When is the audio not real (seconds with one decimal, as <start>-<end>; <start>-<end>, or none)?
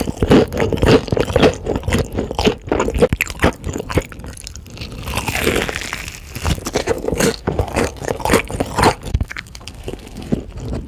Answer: 6.8-8.2; 9.1-10.3